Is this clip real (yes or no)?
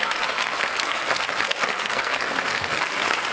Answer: no